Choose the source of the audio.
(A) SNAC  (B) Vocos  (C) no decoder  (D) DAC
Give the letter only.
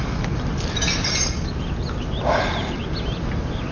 C